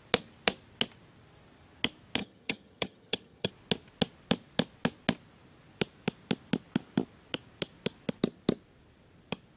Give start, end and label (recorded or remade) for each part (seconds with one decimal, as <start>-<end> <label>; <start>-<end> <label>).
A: 0.0-2.2 recorded; 2.2-3.5 remade; 3.5-9.6 recorded